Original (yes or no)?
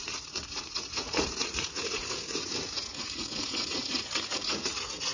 no